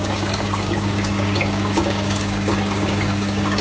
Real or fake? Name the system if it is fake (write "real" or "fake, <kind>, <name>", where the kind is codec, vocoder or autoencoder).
fake, codec, DAC